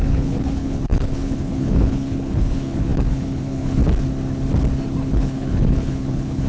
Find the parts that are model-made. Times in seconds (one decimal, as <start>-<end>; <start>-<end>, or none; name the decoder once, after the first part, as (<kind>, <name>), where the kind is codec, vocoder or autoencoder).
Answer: 0.0-3.8 (codec, HILCodec); 5.0-6.5